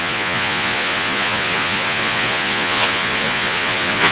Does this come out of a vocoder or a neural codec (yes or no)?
yes